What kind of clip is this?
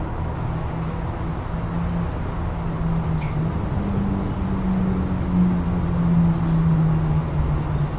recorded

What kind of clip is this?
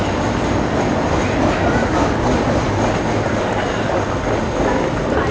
recorded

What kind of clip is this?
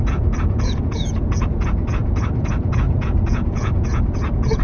remade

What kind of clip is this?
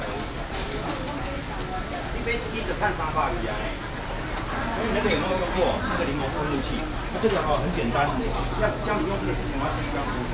recorded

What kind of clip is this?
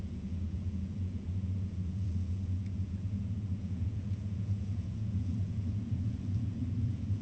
remade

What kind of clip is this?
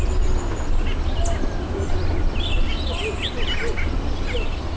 recorded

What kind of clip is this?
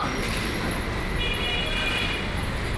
recorded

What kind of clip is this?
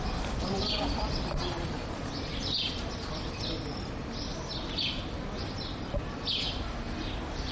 recorded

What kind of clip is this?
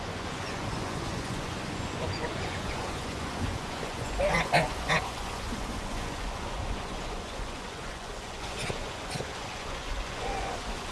remade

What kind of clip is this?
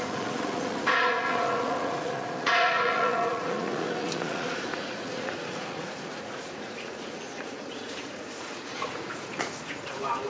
remade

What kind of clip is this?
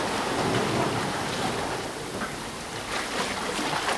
recorded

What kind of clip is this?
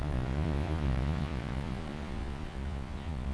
remade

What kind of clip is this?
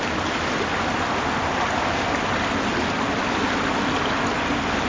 recorded